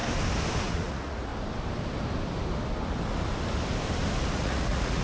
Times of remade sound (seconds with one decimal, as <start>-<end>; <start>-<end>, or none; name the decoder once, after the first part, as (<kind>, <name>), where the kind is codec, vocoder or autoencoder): 0.6-1.3 (vocoder, Vocos); 4.3-5.0